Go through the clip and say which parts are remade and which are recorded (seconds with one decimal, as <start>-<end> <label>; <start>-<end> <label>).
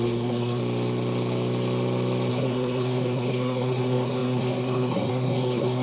0.0-0.6 remade; 0.6-2.3 recorded; 2.3-5.8 remade